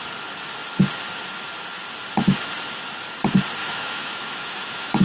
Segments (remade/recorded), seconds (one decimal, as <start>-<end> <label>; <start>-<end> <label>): 0.0-3.6 recorded; 3.6-5.0 remade